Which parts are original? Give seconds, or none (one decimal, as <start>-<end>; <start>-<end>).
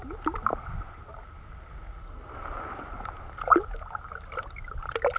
0.0-5.2